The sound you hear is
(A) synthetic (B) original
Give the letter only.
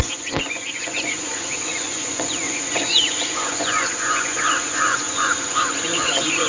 A